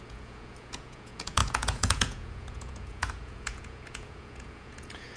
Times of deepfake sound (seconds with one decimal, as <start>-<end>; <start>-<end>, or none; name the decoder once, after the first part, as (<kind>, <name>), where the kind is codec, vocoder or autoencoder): 0.0-5.2 (vocoder, Vocos)